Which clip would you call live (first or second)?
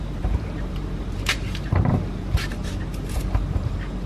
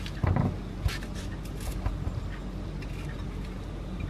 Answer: second